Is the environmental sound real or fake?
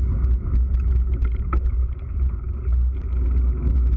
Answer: real